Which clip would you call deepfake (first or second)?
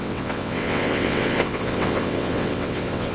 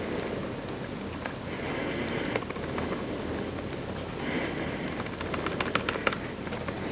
first